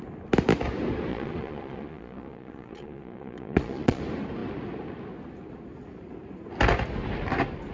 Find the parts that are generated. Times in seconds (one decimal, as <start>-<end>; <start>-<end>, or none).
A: 1.1-4.0